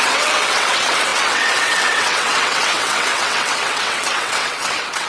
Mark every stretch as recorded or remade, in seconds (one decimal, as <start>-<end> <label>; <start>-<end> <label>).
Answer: 0.0-5.1 remade